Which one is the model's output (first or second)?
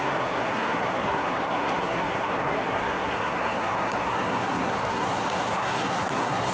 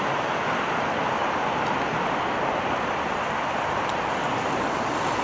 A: first